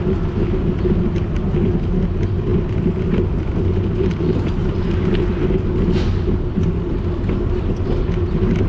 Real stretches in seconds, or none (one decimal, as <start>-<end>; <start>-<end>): 0.0-2.5; 5.1-8.7